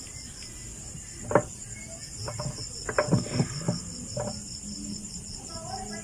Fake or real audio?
real